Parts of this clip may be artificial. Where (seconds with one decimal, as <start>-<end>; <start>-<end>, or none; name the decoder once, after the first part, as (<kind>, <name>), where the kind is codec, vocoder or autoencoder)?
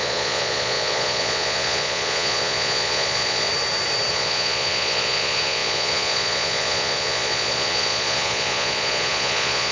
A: 0.0-3.5 (vocoder, Vocos); 4.1-9.7